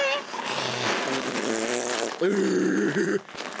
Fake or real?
real